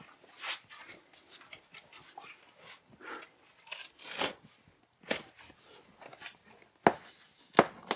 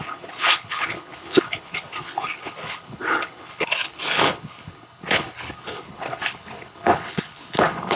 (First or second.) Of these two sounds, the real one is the first